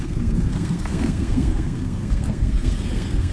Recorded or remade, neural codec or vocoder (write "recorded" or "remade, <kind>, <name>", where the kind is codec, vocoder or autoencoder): remade, codec, SNAC